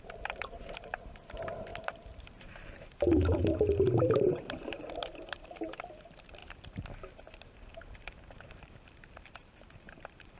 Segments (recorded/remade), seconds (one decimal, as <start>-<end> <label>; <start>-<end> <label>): 0.0-10.4 remade